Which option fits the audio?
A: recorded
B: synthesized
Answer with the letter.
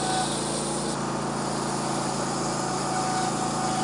A